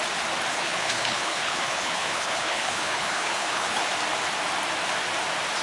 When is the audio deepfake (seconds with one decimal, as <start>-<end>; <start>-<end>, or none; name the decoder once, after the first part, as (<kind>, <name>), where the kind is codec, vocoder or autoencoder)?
0.5-3.9 (codec, HILCodec)